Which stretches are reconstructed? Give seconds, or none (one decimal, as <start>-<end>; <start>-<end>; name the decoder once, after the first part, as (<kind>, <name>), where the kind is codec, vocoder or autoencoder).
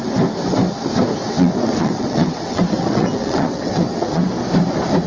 1.2-4.3 (vocoder, WaveNeXt)